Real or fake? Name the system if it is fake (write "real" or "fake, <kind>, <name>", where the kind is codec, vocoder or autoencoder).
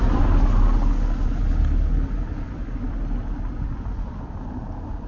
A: real